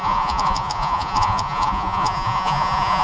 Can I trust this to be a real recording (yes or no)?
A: no